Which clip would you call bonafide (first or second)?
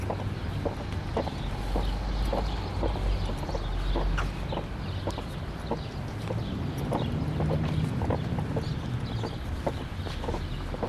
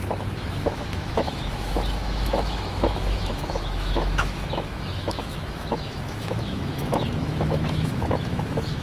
first